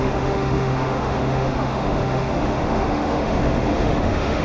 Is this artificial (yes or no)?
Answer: yes